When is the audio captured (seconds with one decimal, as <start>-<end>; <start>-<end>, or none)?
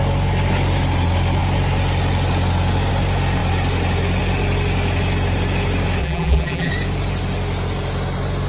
0.0-6.0; 6.7-8.5